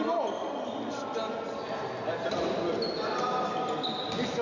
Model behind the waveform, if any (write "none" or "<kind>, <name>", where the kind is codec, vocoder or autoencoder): none